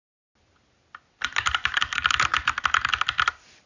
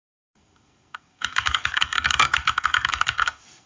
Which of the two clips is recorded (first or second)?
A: first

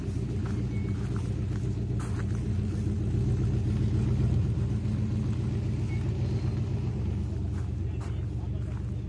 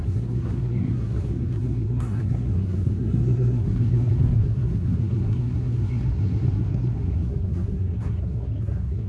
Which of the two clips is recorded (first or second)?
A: first